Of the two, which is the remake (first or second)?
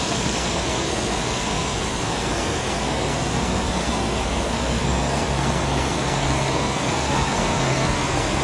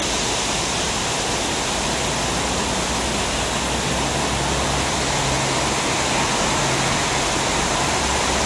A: first